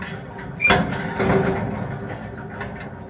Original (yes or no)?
yes